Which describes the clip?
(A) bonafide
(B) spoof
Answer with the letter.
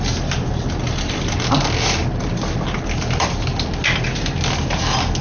A